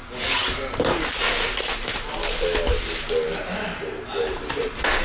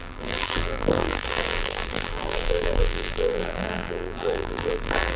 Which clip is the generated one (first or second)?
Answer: second